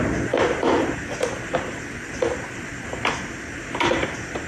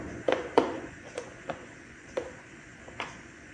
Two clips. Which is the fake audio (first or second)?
second